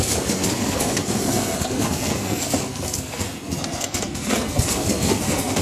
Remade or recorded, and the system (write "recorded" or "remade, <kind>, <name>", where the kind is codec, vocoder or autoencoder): remade, codec, SNAC